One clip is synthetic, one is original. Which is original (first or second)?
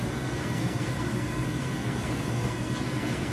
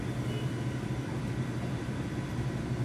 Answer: second